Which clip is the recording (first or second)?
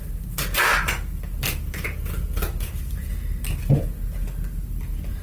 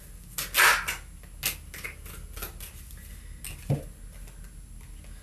second